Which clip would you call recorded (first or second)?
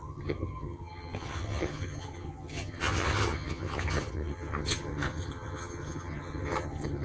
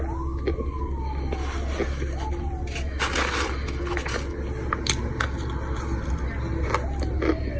second